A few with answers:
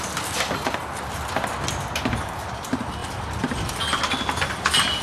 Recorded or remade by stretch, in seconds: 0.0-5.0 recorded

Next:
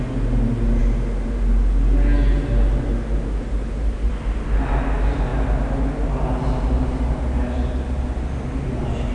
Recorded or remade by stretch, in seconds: 0.0-9.1 recorded

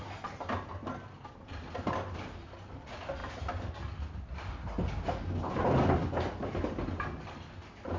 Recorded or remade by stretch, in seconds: 0.0-8.0 recorded

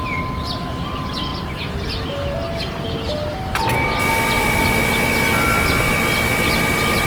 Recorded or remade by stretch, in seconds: 0.0-7.1 recorded

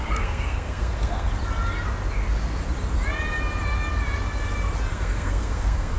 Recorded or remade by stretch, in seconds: 0.0-1.3 remade; 1.3-4.9 recorded; 4.9-6.0 remade

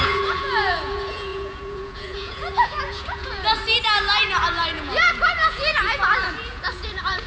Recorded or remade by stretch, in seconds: 0.0-3.6 remade; 3.6-4.4 recorded; 4.4-7.3 remade

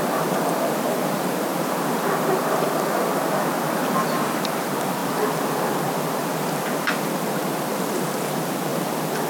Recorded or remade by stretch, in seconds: 0.0-1.5 remade; 1.5-2.6 recorded; 2.6-5.0 remade; 5.0-5.8 recorded; 5.8-6.2 remade; 6.2-7.9 recorded; 7.9-8.7 remade; 8.7-9.3 recorded